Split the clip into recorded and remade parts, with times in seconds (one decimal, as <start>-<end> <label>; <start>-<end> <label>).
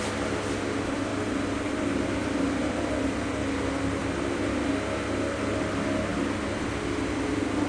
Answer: 0.0-7.7 recorded